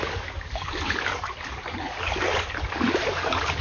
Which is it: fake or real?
fake